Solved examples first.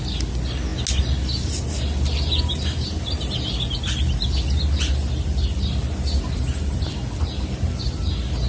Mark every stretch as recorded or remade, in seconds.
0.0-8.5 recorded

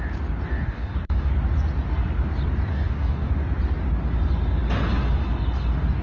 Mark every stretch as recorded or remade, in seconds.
0.0-0.5 recorded; 0.5-1.3 remade; 1.3-2.7 recorded; 2.7-3.3 remade; 3.3-6.0 recorded

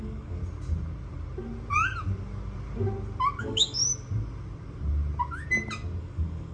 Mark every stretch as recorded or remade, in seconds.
0.0-0.4 remade; 0.4-3.4 recorded; 3.4-3.8 remade; 3.8-6.0 recorded; 6.0-6.5 remade

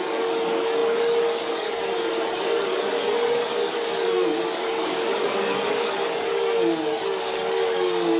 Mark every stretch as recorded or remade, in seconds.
0.0-8.2 remade

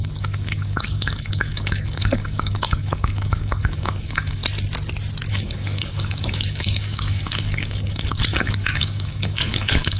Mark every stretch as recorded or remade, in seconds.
0.0-4.4 remade; 4.4-5.3 recorded; 5.3-10.0 remade

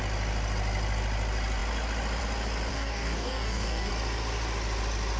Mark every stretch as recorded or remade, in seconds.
0.0-2.7 recorded; 2.7-3.9 remade; 3.9-5.2 recorded